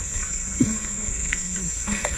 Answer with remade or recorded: remade